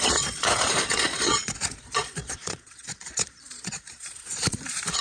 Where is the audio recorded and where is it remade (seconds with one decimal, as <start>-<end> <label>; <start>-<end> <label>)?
0.0-5.0 remade